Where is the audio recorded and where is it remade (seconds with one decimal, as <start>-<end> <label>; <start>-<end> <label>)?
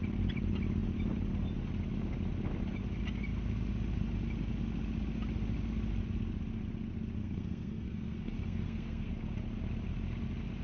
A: 0.0-7.2 recorded; 7.2-9.1 remade; 9.1-10.6 recorded